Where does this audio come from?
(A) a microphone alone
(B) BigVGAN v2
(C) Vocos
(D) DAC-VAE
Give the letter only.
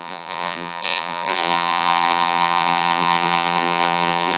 B